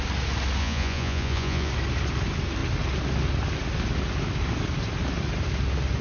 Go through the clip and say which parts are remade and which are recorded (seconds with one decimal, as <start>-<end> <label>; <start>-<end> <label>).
0.0-0.6 recorded; 0.6-1.7 remade; 1.7-6.0 recorded